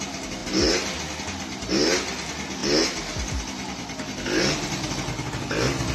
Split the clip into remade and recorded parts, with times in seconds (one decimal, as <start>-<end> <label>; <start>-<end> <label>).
0.0-5.9 recorded